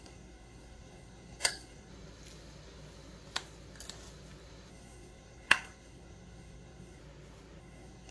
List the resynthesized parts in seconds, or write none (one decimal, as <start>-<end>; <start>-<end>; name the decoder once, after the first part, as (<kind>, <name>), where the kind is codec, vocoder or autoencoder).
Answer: 0.0-1.9 (codec, SNAC); 4.7-7.0; 7.6-8.1